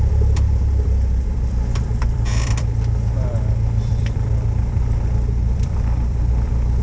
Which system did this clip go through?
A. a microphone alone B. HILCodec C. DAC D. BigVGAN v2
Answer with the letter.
D